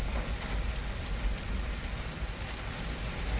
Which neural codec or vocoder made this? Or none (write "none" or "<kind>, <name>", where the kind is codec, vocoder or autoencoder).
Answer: none